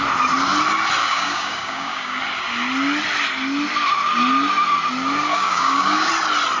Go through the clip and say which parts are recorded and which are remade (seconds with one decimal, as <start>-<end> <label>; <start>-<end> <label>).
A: 0.0-1.0 recorded; 1.0-2.2 remade; 2.2-5.3 recorded; 5.3-6.1 remade; 6.1-6.6 recorded